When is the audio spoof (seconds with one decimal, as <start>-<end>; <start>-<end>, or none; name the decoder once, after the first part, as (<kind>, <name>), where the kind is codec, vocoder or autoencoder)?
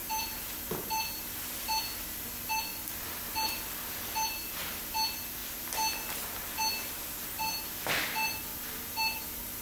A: 0.0-0.5 (vocoder, BigVGAN v2); 2.7-3.6; 8.5-9.2